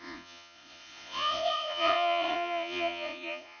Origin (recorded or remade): remade